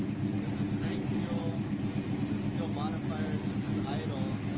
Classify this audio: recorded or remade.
recorded